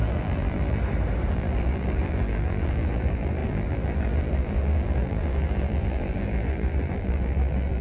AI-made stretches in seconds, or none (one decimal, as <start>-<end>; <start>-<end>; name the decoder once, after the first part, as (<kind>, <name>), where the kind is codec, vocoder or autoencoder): 0.0-0.8 (vocoder, BigVGAN v2); 1.3-7.8